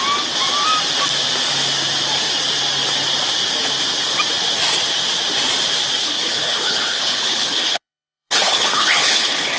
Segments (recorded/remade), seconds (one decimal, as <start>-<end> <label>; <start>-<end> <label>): 0.0-6.0 recorded; 6.0-9.6 remade